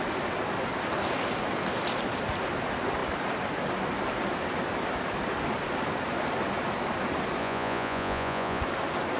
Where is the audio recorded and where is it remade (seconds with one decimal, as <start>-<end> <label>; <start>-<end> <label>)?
0.0-7.4 recorded; 7.4-8.6 remade; 8.6-9.2 recorded